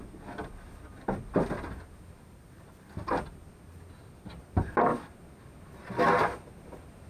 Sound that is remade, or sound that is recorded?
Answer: recorded